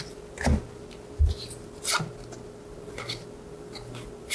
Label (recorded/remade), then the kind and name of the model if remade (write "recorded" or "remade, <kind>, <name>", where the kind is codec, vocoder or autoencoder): recorded